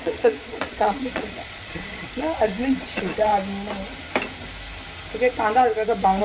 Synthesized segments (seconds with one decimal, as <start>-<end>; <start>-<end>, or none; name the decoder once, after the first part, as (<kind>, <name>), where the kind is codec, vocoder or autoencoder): 0.0-3.3 (vocoder, Vocos)